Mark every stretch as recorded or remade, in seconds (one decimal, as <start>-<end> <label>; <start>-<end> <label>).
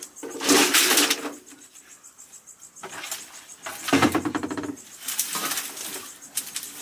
0.0-6.8 recorded